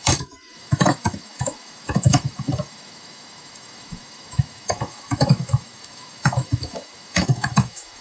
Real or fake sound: fake